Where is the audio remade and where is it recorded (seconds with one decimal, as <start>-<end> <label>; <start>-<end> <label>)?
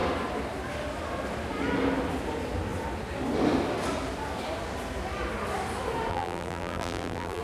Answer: 0.0-6.1 recorded; 6.1-7.4 remade